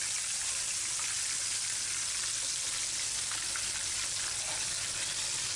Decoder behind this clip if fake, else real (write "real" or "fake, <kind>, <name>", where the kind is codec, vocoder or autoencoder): real